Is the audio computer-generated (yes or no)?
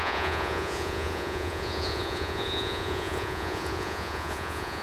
yes